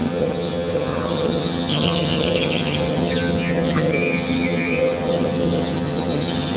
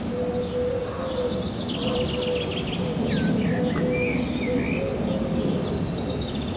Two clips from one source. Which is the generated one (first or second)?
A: first